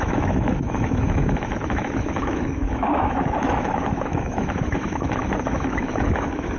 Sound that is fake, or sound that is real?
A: fake